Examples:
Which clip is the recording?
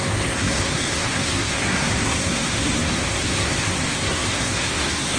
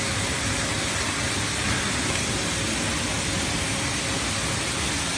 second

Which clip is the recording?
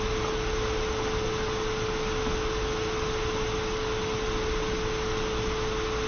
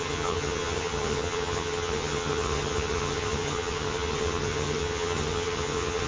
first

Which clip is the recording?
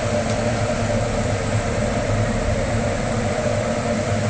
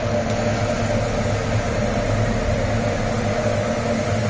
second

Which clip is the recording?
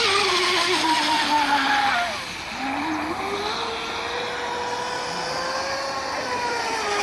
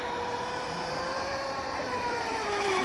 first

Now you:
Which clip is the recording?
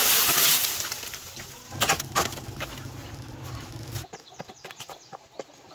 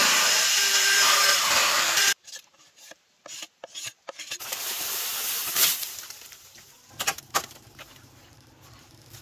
first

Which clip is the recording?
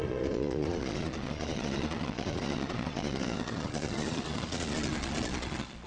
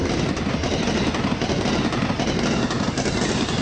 second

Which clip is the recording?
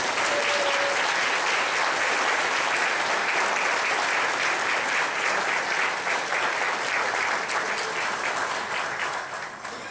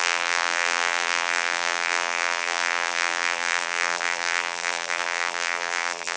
first